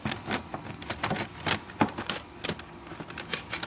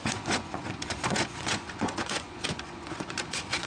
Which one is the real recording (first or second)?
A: first